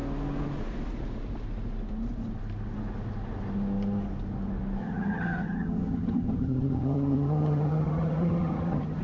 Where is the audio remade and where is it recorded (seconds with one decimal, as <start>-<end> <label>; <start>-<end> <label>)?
0.0-4.8 recorded; 4.8-9.0 remade